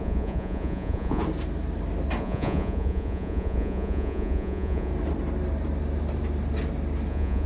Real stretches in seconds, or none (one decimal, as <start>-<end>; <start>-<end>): 1.2-2.2; 4.9-7.1